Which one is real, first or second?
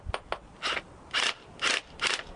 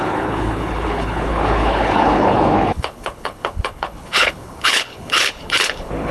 first